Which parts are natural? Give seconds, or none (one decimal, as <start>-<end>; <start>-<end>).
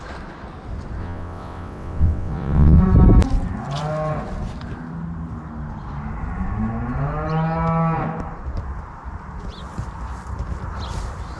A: 0.0-1.0; 2.8-11.4